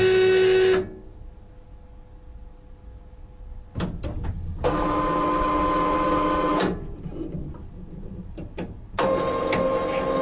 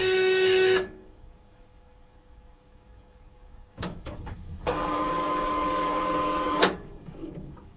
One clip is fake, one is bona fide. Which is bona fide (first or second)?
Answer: first